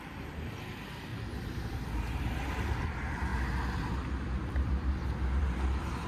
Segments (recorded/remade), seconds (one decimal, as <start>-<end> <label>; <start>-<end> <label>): 0.0-1.1 remade; 1.1-1.6 recorded; 1.6-3.3 remade; 3.3-3.9 recorded; 3.9-6.1 remade